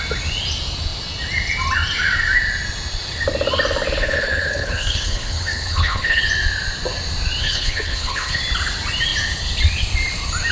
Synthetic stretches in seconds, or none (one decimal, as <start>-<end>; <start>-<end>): 4.0-6.2; 7.4-8.4